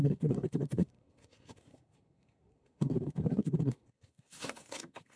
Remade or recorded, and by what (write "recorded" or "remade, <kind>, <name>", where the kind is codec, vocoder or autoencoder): remade, codec, SNAC